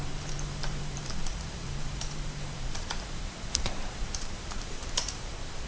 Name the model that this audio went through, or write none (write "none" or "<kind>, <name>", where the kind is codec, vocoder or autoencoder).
vocoder, BigVGAN v2